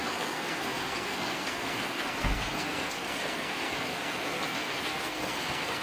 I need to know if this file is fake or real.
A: fake